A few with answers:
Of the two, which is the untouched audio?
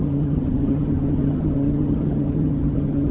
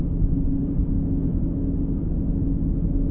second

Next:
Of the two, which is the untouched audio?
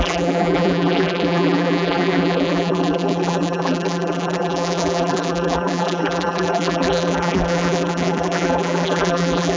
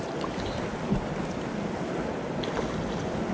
second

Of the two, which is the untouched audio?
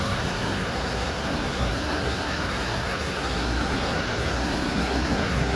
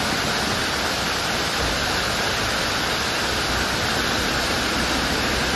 second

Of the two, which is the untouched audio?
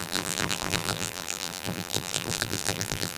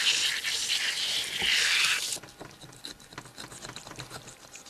second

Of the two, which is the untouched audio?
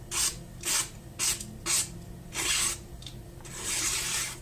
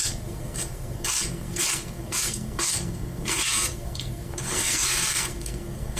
first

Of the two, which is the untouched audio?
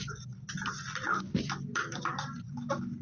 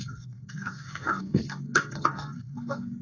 first